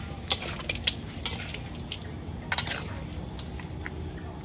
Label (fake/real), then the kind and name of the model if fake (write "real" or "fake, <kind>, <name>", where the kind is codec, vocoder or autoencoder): real